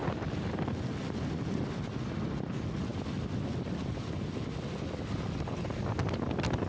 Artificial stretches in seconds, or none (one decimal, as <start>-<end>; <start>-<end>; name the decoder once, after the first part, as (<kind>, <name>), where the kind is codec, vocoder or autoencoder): none